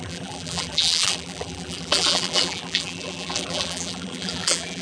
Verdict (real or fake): fake